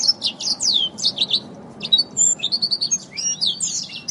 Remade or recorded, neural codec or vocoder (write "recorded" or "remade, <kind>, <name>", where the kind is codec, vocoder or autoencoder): remade, vocoder, BigVGAN v2